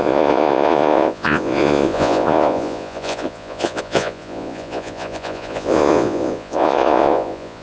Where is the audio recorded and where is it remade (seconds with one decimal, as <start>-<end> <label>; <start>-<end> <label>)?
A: 0.0-7.6 remade